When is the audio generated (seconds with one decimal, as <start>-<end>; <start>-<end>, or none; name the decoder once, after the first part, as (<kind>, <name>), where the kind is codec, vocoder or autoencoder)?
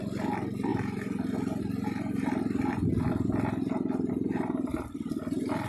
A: none